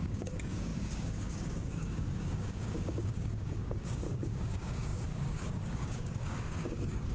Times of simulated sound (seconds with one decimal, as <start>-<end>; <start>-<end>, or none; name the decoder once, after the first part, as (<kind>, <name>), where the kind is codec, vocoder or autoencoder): 0.0-7.1 (codec, DAC)